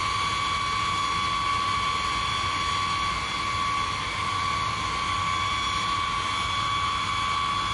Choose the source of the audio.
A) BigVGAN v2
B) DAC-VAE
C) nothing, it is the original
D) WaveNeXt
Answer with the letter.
C